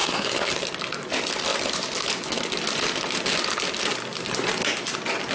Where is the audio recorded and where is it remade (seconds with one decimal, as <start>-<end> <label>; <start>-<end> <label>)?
0.0-0.5 remade; 0.5-5.3 recorded